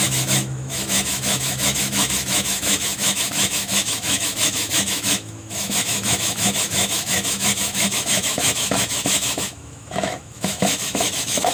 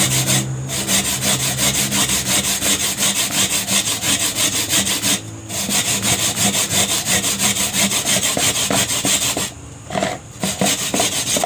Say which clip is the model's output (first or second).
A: first